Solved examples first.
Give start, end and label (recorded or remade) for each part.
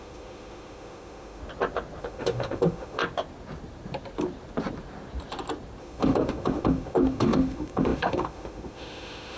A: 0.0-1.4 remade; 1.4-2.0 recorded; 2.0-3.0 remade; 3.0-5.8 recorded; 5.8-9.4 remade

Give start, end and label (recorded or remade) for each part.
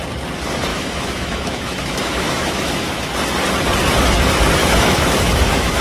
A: 0.0-0.7 recorded; 0.7-3.1 remade; 3.1-4.6 recorded; 4.6-5.8 remade